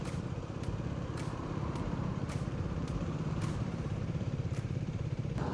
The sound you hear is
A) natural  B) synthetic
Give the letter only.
B